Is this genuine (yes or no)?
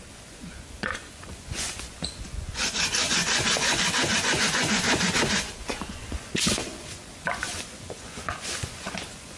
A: no